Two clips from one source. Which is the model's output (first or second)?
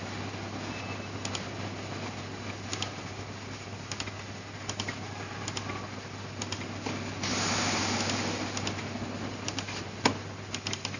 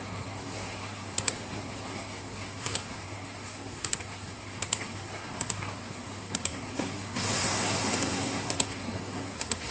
second